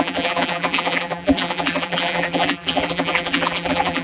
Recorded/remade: remade